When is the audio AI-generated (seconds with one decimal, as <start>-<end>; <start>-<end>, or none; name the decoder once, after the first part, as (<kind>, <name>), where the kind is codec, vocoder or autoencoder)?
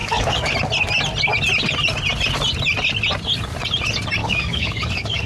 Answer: 0.0-0.5 (codec, DAC); 4.2-5.3